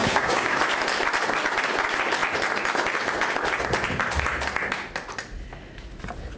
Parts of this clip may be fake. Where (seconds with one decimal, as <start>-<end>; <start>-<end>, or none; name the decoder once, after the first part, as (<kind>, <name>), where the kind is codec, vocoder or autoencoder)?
0.0-0.6 (codec, DAC)